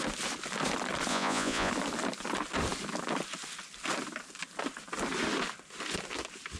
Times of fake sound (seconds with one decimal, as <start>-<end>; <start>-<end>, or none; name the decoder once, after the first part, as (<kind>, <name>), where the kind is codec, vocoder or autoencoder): 1.1-1.7 (vocoder, Vocos)